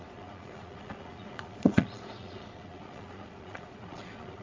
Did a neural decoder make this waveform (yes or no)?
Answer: yes